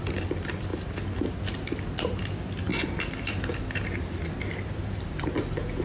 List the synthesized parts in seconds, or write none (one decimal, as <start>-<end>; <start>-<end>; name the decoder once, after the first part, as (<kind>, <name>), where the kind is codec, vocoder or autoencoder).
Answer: none